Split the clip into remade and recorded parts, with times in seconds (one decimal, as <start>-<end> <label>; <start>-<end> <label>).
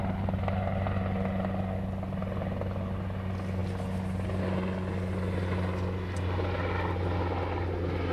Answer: 0.0-8.1 recorded